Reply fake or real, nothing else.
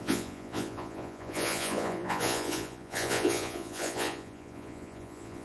fake